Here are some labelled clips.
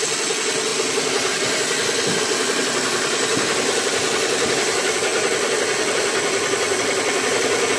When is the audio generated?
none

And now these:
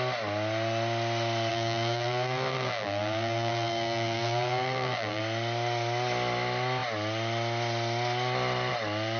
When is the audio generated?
1.5-5.2 (vocoder, BigVGAN v2)

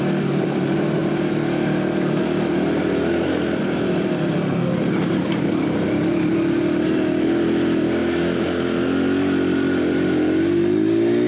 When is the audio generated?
0.0-1.0 (vocoder, BigVGAN v2); 3.6-8.0